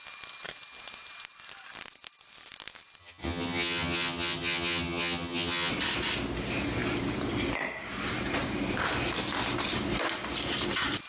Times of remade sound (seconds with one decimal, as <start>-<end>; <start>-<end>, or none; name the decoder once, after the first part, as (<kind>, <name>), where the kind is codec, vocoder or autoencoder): 3.0-5.7 (vocoder, HiFi-GAN)

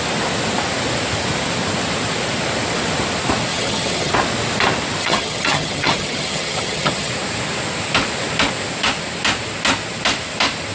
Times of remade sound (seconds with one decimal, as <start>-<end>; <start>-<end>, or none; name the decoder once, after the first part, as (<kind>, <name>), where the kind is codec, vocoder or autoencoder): 3.5-4.1 (vocoder, HiFi-GAN); 5.0-7.1

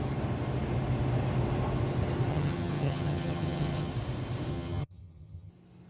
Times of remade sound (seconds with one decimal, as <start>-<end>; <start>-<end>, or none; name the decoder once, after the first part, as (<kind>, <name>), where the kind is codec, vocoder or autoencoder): 2.3-3.9 (vocoder, HiFi-GAN); 4.5-5.5

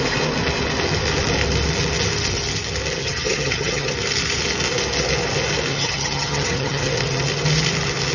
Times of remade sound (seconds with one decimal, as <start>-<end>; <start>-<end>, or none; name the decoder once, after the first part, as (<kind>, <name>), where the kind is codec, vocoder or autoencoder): 3.0-3.9 (vocoder, HiFi-GAN); 5.7-6.9

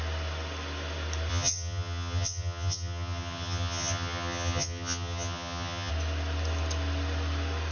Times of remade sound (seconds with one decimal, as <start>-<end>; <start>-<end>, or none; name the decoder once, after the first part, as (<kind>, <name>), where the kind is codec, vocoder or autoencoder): 1.3-5.9 (vocoder, HiFi-GAN)

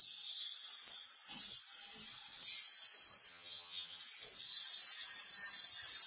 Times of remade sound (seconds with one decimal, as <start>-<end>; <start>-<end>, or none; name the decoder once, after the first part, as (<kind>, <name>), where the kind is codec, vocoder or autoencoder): 3.3-4.0 (vocoder, HiFi-GAN)

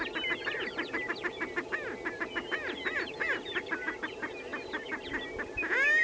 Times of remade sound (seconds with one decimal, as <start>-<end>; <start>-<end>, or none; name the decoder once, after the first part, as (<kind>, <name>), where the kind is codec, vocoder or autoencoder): none

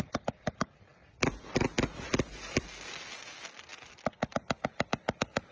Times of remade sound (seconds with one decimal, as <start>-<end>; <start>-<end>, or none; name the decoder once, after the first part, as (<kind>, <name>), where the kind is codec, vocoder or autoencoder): none